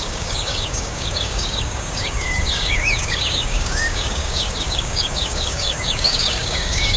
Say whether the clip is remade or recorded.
remade